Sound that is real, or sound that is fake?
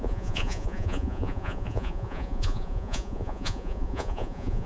fake